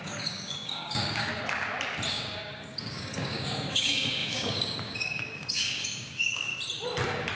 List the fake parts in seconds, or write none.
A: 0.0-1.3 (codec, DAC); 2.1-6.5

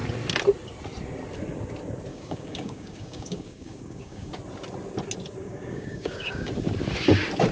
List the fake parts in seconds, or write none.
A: 2.1-4.3 (codec, DAC); 5.4-6.5

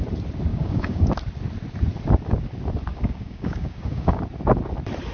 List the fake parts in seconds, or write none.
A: 0.5-1.1 (codec, DAC); 2.9-4.2